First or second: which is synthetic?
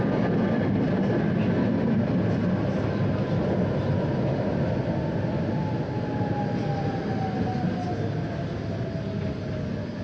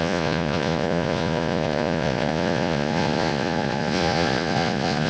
second